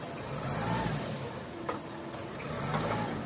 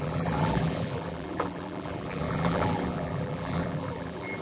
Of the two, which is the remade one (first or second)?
second